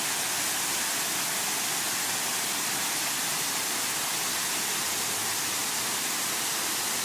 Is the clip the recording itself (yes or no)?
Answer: yes